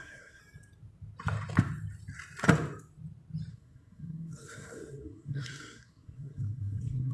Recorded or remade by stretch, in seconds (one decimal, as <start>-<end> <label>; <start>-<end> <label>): 0.0-0.4 remade; 0.4-3.5 recorded; 3.5-7.1 remade

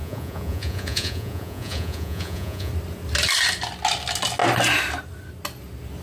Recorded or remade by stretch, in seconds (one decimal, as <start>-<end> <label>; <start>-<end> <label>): 0.0-2.7 remade; 2.7-6.0 recorded